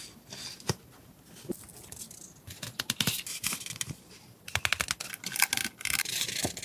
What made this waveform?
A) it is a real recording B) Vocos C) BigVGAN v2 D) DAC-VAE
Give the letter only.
A